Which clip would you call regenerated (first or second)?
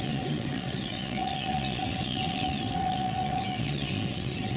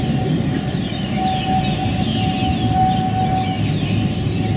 first